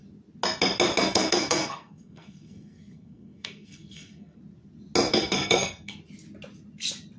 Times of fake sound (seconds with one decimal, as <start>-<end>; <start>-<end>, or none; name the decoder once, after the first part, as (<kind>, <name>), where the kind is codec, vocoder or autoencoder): 1.0-4.4 (codec, SNAC); 5.1-6.0